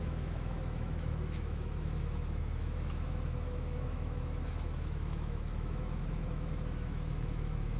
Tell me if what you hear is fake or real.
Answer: fake